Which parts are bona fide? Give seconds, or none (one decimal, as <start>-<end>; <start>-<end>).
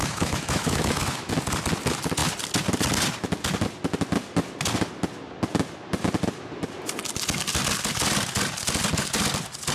1.3-9.7